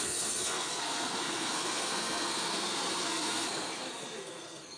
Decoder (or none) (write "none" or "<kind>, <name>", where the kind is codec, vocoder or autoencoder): codec, SNAC